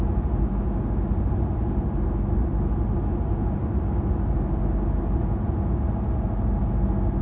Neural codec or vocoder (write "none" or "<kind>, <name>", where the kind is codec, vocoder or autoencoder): none